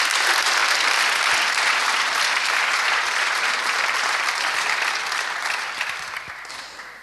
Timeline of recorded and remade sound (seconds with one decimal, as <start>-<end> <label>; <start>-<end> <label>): 0.0-7.0 recorded